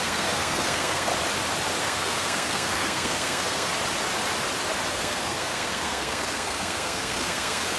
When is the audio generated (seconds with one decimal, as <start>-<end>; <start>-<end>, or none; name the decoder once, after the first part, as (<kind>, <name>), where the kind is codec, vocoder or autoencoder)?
0.0-1.1 (codec, SNAC); 1.8-3.7; 4.9-7.8

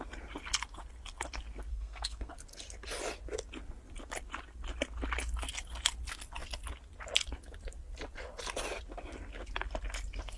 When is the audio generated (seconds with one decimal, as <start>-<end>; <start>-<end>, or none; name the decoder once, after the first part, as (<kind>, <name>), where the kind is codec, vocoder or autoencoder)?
1.7-2.3 (codec, SNAC)

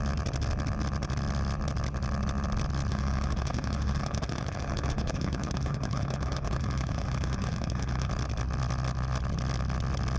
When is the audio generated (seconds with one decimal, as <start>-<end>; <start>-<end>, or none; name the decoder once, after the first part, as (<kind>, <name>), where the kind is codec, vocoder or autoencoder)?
2.9-8.1 (autoencoder, DAC-VAE)